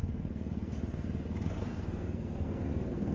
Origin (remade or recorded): remade